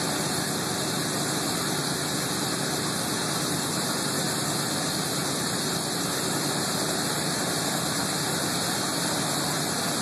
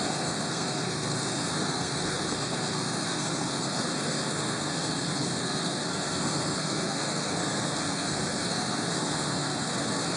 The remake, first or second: second